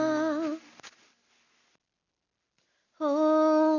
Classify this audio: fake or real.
real